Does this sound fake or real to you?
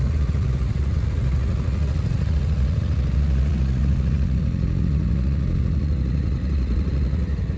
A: fake